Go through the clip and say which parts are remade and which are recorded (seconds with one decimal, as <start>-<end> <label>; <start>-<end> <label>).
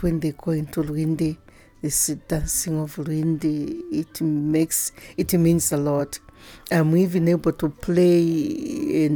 0.0-9.2 recorded